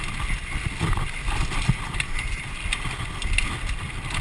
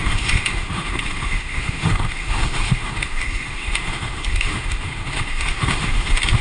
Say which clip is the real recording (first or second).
first